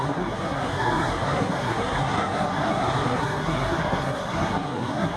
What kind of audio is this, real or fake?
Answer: fake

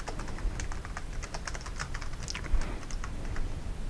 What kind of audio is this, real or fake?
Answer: real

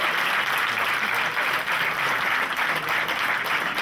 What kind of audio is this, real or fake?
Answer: real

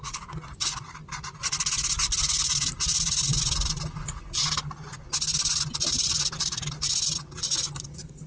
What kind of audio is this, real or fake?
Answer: real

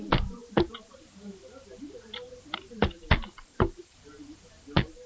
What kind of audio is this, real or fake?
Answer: real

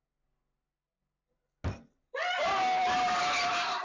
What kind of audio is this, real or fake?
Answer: real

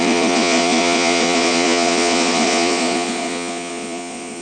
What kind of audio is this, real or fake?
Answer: fake